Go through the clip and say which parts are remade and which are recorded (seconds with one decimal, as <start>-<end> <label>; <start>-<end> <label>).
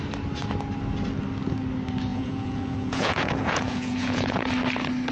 0.0-2.1 recorded; 2.1-4.5 remade; 4.5-5.1 recorded